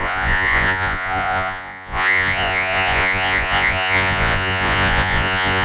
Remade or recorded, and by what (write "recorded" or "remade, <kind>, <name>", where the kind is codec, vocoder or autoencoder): remade, vocoder, Vocos